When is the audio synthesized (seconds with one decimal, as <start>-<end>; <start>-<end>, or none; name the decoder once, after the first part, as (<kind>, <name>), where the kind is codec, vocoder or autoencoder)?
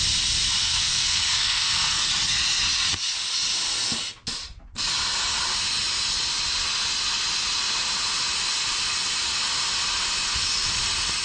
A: 0.6-2.1 (codec, SNAC)